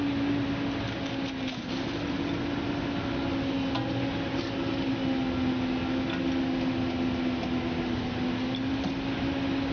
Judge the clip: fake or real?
real